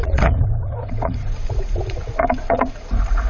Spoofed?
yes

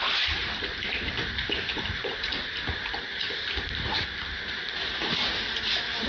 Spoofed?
yes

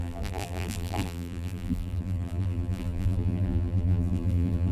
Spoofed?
yes